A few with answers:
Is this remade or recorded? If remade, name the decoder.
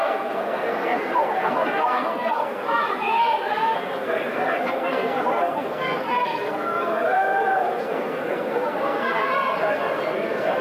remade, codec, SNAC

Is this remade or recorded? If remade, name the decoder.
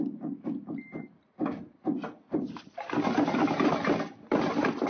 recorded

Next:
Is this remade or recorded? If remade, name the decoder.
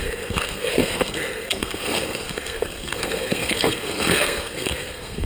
remade, codec, SNAC